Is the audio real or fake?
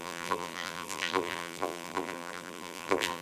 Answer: fake